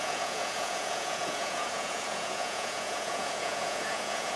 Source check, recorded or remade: remade